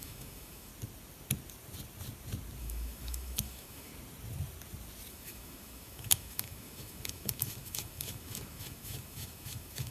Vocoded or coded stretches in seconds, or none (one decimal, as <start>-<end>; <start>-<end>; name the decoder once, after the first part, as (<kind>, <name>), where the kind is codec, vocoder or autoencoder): 0.0-0.7 (autoencoder, DAC-VAE); 2.6-3.9; 5.1-9.9